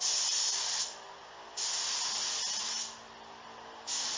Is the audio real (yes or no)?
yes